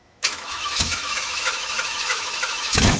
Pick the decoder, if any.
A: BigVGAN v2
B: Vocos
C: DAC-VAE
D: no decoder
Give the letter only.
C